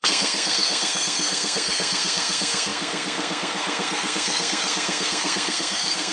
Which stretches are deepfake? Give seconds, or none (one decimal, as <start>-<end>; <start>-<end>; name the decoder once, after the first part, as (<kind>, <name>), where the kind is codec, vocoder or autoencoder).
0.0-6.1 (codec, SNAC)